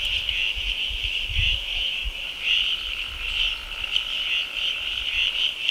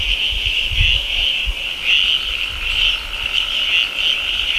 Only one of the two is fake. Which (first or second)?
first